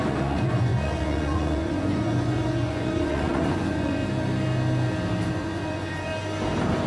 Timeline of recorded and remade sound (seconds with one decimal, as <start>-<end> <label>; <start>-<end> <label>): 0.0-4.0 remade; 4.0-5.3 recorded; 5.3-6.1 remade; 6.1-6.9 recorded